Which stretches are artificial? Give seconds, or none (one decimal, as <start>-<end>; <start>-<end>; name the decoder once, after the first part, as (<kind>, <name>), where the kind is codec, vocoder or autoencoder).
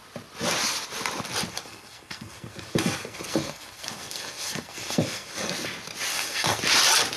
1.5-5.5 (codec, SNAC); 6.1-6.6